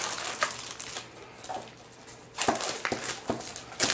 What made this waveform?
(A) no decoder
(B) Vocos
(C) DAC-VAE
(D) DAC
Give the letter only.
A